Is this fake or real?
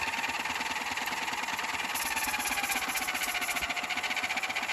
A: real